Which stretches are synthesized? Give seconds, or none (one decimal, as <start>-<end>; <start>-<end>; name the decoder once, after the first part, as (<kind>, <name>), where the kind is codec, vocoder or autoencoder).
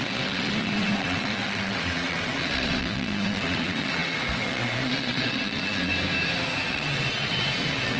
0.0-5.9 (vocoder, WaveNeXt); 6.7-8.0